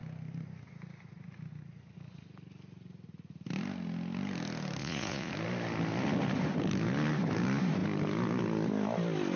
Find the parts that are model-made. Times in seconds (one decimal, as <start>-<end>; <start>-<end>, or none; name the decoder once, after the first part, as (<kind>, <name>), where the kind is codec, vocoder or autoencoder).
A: 4.8-5.3 (vocoder, Vocos)